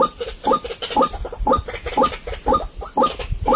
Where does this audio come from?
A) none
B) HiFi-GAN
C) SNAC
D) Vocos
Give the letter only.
A